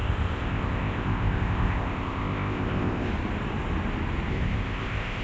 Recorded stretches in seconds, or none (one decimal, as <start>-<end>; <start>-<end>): 3.1-4.3